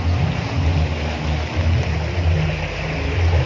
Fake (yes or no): no